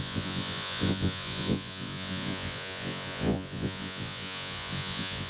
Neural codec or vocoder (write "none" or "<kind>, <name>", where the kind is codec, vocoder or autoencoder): vocoder, Vocos